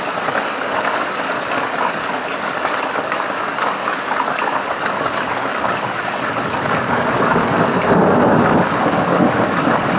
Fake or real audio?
fake